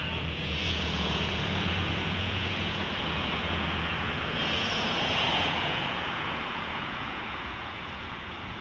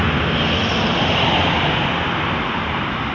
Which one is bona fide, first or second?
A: second